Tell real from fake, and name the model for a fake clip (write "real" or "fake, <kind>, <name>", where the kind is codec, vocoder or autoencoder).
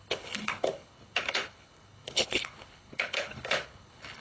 fake, codec, HILCodec